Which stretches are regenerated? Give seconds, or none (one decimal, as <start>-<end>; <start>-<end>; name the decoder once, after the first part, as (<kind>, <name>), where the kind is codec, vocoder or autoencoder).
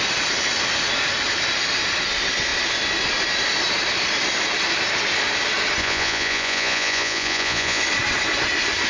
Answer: 5.8-7.8 (vocoder, Vocos)